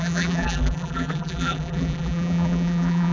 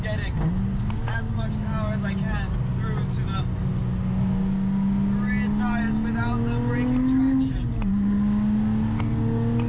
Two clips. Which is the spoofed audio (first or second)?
first